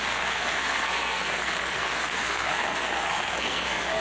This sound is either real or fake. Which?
fake